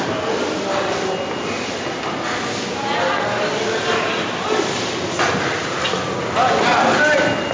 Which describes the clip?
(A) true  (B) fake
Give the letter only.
A